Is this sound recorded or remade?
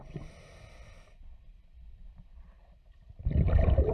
recorded